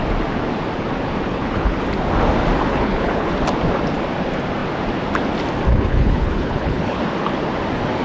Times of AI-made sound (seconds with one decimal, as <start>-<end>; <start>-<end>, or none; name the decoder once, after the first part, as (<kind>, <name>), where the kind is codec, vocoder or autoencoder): 1.3-1.8 (codec, HILCodec); 2.7-3.3; 5.7-7.0